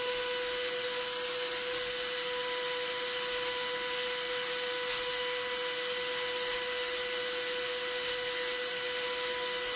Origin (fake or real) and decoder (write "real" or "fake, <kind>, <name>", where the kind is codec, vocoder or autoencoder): real